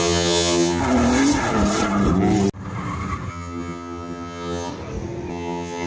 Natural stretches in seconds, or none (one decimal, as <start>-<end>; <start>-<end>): 0.8-3.3; 4.7-5.3